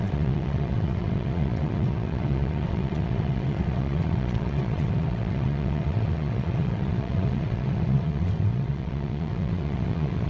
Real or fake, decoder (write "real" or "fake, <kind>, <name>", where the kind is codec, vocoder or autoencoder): fake, vocoder, WaveNeXt